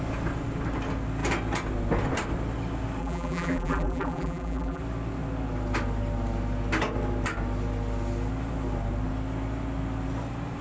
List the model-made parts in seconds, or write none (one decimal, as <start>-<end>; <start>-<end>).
3.0-4.8